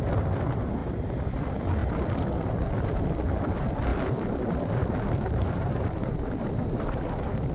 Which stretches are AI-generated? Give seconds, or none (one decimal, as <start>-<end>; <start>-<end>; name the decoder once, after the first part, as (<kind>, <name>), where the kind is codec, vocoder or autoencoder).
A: 3.9-7.1 (vocoder, BigVGAN v2)